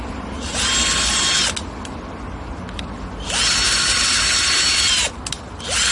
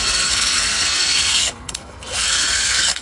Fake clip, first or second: second